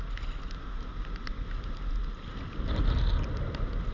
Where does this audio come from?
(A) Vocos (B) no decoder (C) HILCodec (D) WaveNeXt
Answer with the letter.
B